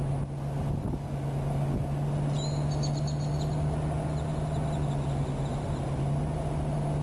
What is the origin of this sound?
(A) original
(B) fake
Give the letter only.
A